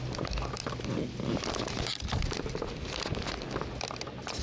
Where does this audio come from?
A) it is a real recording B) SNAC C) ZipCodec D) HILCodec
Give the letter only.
A